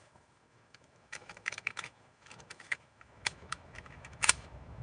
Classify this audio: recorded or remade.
remade